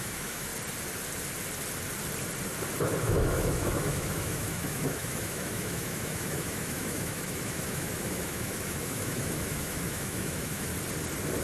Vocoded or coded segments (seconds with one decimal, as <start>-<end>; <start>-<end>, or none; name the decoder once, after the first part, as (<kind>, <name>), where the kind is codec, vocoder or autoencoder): 0.0-0.5 (autoencoder, DAC-VAE); 3.0-10.7